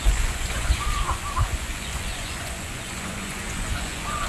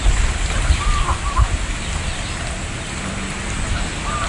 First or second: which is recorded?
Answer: second